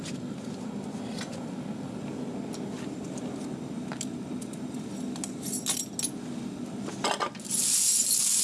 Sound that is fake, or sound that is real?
real